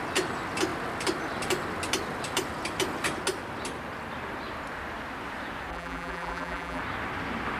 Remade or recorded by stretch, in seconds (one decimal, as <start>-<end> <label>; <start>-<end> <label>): 0.0-5.7 recorded; 5.7-6.8 remade; 6.8-7.6 recorded